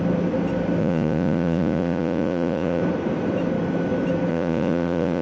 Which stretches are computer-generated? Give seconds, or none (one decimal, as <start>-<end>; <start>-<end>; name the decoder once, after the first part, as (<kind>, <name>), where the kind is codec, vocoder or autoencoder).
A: 0.8-2.8 (vocoder, Vocos); 4.3-5.2